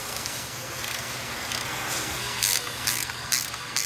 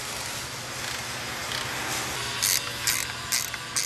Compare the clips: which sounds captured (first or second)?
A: second